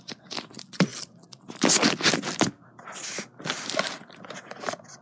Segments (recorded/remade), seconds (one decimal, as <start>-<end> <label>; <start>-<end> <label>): 0.0-0.9 remade; 0.9-3.4 recorded; 3.4-5.0 remade